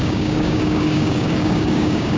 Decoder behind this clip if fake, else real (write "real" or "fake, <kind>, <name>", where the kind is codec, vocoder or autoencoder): fake, codec, DAC